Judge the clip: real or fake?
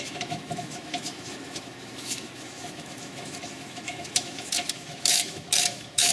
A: fake